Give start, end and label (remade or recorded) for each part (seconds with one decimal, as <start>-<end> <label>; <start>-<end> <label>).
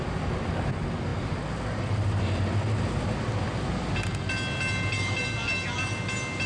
0.0-6.5 recorded